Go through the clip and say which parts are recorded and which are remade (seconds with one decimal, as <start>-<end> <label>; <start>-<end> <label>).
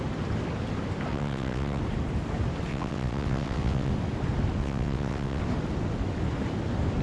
0.0-1.1 recorded; 1.1-1.8 remade; 1.8-2.7 recorded; 2.7-3.9 remade; 3.9-4.6 recorded; 4.6-5.4 remade; 5.4-7.0 recorded